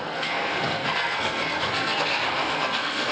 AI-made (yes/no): yes